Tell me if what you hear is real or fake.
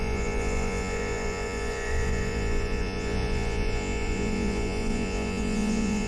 fake